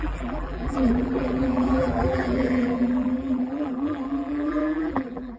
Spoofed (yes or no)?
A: yes